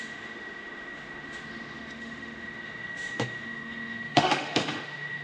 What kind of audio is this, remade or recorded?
remade